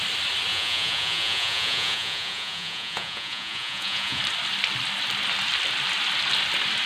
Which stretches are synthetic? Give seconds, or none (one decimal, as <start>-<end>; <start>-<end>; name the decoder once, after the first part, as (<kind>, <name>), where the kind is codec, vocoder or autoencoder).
0.5-4.2 (vocoder, Vocos)